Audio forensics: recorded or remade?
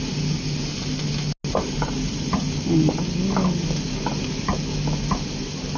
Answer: recorded